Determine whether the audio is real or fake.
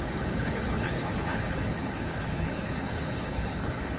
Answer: fake